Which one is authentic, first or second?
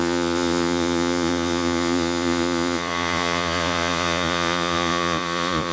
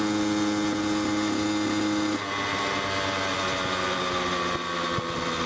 second